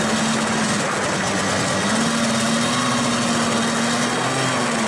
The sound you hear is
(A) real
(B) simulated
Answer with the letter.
A